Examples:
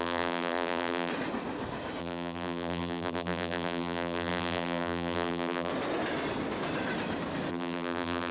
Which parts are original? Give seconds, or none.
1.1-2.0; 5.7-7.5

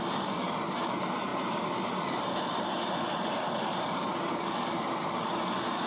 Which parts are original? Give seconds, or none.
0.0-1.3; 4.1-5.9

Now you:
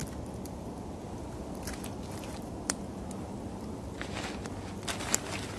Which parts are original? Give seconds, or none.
0.0-0.6

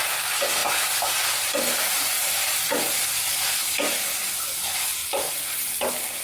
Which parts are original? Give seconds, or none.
0.0-6.2

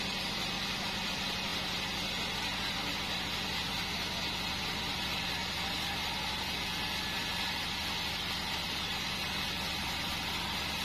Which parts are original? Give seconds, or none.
1.5-4.8

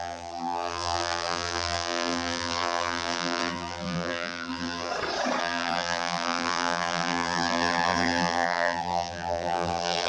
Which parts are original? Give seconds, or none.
4.9-5.4

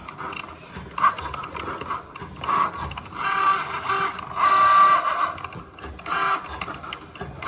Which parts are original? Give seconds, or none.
0.0-7.5